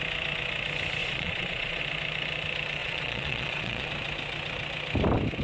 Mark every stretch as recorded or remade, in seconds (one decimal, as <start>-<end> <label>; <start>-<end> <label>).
0.0-1.0 recorded; 1.0-1.8 remade; 1.8-2.8 recorded; 2.8-3.9 remade; 3.9-5.4 recorded